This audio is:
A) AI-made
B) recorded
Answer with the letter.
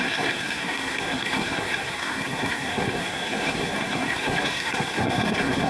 A